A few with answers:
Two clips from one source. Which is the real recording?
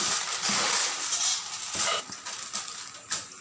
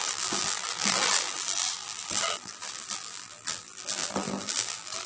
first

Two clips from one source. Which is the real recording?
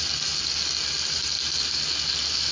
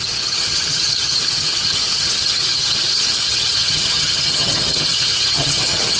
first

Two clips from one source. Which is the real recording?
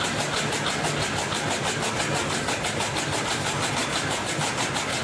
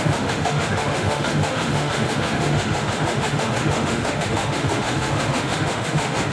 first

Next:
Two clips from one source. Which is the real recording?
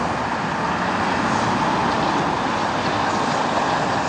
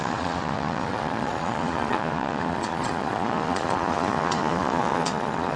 first